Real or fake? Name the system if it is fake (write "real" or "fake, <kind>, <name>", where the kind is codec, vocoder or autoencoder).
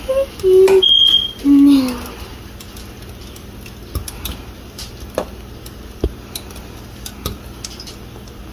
real